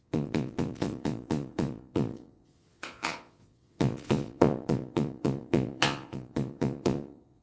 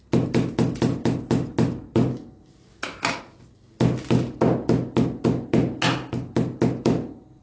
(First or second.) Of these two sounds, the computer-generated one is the first